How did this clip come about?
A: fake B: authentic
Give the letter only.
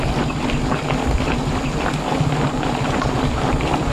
B